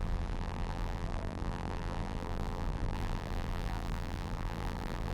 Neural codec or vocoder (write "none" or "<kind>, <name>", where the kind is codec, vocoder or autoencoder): vocoder, BigVGAN v2